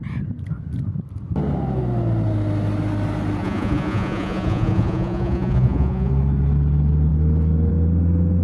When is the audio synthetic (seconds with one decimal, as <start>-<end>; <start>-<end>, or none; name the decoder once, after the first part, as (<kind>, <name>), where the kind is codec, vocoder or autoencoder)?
3.4-6.1 (vocoder, Vocos)